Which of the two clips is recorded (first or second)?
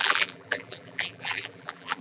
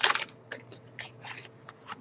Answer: second